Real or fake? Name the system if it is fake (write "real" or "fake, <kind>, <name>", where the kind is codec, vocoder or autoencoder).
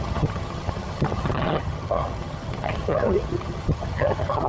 fake, vocoder, HiFi-GAN